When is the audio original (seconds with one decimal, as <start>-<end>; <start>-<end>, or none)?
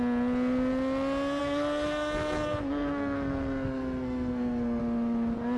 0.0-1.4; 4.8-5.6